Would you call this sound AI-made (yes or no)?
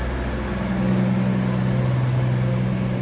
no